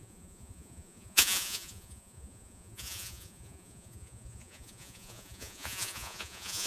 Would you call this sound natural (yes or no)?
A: no